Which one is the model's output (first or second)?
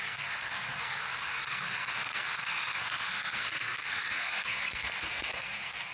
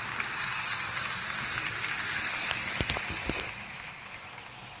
first